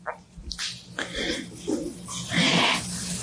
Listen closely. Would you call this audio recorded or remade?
recorded